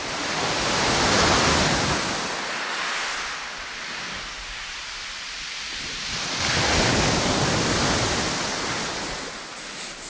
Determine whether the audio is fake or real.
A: real